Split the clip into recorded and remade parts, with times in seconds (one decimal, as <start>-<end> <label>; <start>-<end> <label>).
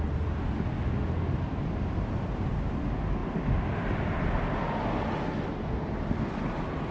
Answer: 0.0-6.9 recorded